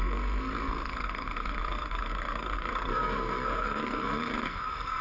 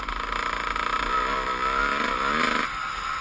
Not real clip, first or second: first